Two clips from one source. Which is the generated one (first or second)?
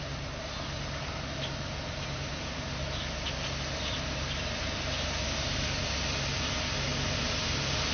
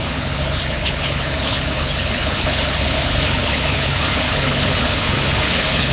second